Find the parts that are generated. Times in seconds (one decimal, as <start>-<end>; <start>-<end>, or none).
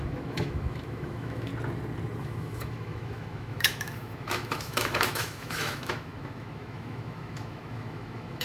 0.0-1.5; 2.2-8.4